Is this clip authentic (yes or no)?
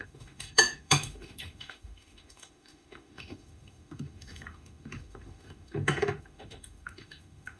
no